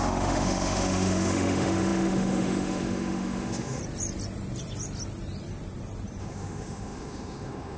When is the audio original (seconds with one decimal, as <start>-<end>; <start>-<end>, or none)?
3.8-6.2